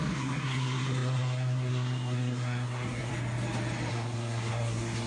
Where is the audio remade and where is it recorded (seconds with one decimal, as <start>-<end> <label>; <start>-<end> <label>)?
0.0-3.1 remade; 3.1-3.9 recorded; 3.9-5.1 remade